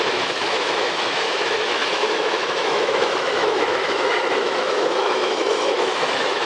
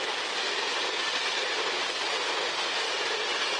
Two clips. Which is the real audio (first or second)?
second